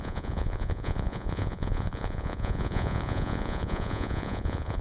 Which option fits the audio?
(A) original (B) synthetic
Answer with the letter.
B